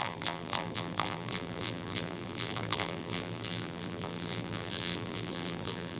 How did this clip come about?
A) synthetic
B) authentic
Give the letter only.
A